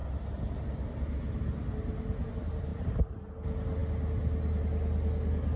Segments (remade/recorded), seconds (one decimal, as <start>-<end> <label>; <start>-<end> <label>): 0.0-2.7 recorded; 2.7-3.3 remade; 3.3-5.6 recorded